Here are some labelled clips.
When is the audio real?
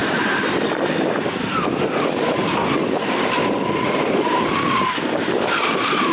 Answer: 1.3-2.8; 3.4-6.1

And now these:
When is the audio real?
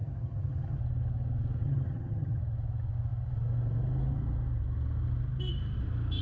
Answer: 0.8-1.6; 2.4-6.2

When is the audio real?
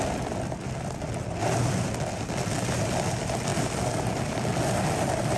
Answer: 0.0-5.4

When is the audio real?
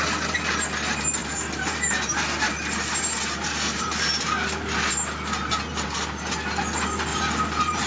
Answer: 0.0-1.2; 4.9-7.1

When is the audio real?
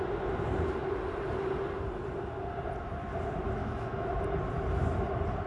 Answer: 0.0-3.6; 4.2-5.5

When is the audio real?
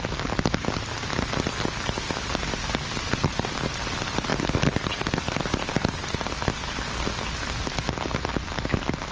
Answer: 0.0-9.1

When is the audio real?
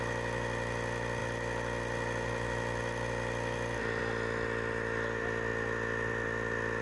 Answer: 0.0-6.8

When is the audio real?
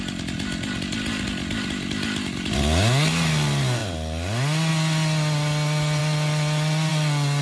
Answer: 0.0-7.4